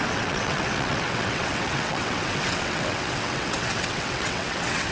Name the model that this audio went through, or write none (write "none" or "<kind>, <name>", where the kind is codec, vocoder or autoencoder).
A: vocoder, WaveNeXt